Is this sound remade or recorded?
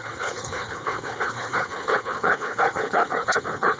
remade